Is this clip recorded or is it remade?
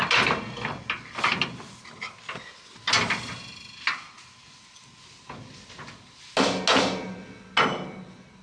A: recorded